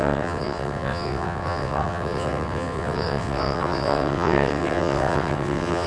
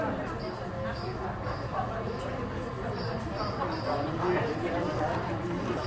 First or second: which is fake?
first